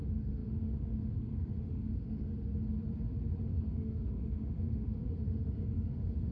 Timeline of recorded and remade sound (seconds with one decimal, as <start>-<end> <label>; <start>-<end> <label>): 0.0-2.3 remade; 2.3-3.4 recorded; 3.4-6.3 remade